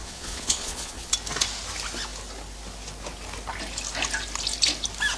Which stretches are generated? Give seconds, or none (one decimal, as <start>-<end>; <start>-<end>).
0.0-1.1